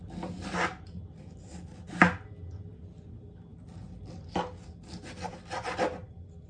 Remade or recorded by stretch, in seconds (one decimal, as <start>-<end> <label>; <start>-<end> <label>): 0.0-6.5 recorded